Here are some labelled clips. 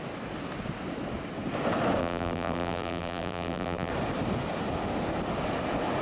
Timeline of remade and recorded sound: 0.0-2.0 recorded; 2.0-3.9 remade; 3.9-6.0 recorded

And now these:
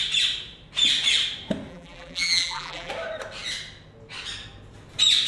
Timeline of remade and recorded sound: 0.0-1.7 recorded; 1.7-2.9 remade; 2.9-5.3 recorded

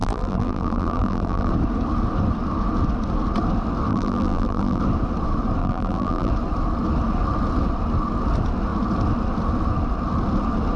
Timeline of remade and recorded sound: 0.0-1.5 remade; 1.5-3.9 recorded; 3.9-4.8 remade; 4.8-5.6 recorded; 5.6-6.3 remade; 6.3-10.8 recorded